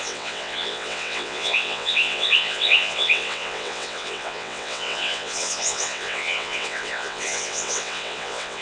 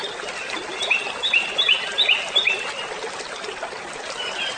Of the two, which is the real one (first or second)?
second